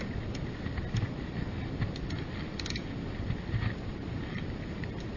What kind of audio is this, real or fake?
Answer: real